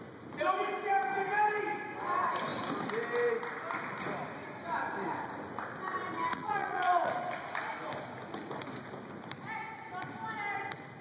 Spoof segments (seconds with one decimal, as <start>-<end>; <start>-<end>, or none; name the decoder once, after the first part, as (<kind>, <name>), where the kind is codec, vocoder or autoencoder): 6.3-7.1 (vocoder, Vocos)